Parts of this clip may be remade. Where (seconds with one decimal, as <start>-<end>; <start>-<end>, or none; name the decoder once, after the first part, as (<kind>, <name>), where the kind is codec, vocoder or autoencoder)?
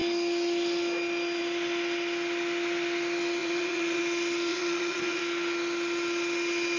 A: 3.4-4.0 (vocoder, Vocos); 4.5-5.2